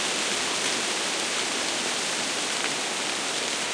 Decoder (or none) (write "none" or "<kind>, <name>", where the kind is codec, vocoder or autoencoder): none